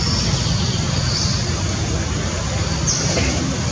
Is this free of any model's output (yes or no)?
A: yes